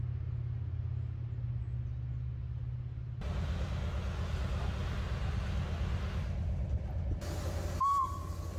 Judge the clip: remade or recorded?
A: recorded